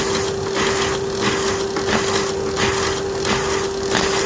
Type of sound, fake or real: real